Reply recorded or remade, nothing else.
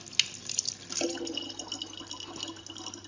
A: recorded